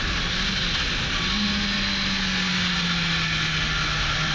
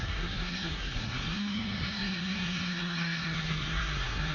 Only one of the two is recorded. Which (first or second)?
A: first